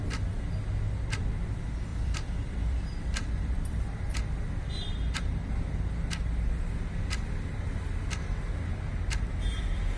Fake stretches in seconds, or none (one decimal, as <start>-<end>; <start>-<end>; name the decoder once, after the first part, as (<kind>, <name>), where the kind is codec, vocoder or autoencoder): 1.9-5.5 (vocoder, BigVGAN v2)